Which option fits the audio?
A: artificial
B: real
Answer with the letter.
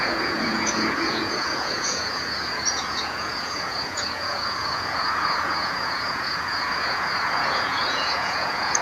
A